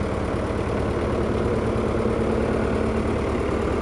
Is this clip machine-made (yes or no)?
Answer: no